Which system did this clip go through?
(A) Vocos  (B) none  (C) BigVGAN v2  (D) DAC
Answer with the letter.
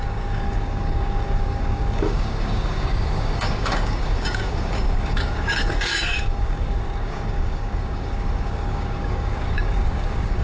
D